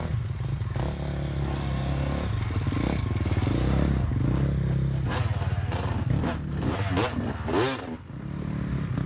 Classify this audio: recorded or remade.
recorded